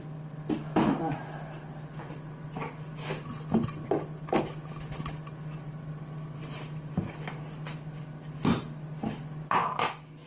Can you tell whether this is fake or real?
real